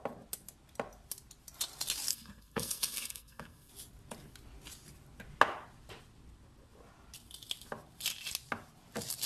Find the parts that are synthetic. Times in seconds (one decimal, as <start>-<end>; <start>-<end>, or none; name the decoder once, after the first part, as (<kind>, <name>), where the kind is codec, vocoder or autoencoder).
2.1-3.7 (codec, SNAC)